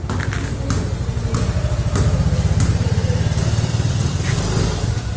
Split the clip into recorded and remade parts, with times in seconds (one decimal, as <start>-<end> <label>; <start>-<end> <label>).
0.0-5.2 recorded